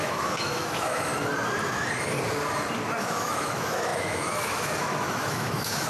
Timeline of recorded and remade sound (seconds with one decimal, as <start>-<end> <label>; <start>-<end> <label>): 0.0-1.1 remade; 1.1-3.0 recorded; 3.0-5.9 remade